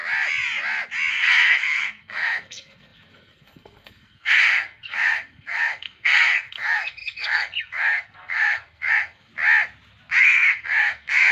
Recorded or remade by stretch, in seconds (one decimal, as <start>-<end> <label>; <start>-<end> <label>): 0.0-1.1 recorded; 1.1-9.3 remade; 9.3-10.2 recorded; 10.2-11.3 remade